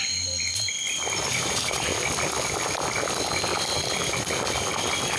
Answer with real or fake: real